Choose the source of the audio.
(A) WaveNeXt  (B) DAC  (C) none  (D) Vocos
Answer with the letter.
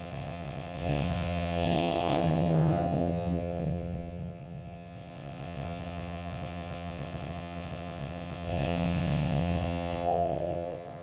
A